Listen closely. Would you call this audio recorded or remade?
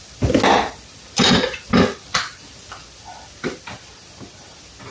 recorded